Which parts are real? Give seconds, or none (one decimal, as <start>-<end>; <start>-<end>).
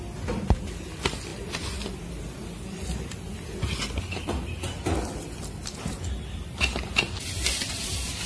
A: 0.0-8.3